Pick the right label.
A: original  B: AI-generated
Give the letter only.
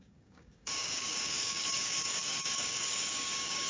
B